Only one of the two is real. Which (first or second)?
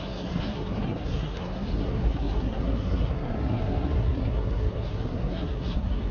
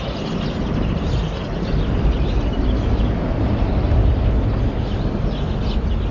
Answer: second